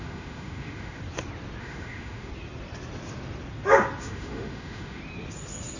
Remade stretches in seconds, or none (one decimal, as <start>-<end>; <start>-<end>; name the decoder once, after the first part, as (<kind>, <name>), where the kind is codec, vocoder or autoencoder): 0.0-1.0 (autoencoder, DAC-VAE); 1.6-2.3; 4.0-5.0